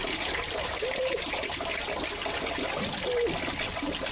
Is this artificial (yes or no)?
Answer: no